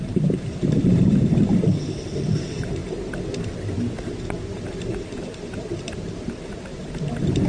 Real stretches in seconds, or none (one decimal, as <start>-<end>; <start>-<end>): 2.8-6.5